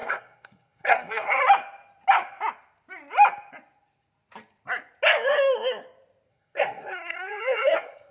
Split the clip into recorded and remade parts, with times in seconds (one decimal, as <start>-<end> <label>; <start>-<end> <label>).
0.0-1.4 remade; 1.4-6.3 recorded; 6.3-8.1 remade